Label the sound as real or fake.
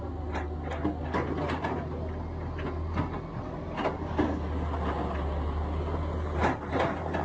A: real